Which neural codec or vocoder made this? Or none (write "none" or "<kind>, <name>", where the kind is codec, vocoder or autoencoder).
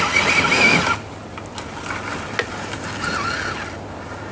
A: none